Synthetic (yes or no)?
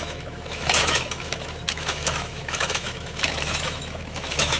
yes